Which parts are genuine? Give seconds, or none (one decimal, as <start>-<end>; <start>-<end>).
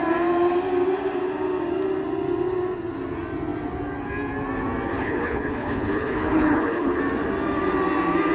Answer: 0.0-4.9; 7.0-8.3